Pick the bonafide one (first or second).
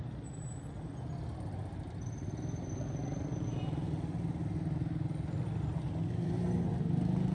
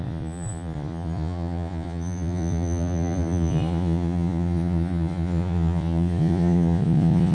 first